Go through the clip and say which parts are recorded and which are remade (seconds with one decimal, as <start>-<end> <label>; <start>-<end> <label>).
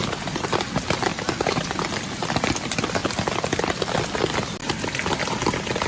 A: 0.0-5.9 recorded